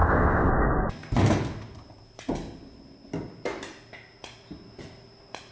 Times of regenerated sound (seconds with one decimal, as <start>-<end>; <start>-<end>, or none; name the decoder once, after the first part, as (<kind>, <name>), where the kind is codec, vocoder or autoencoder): 0.0-0.5 (codec, ZipCodec)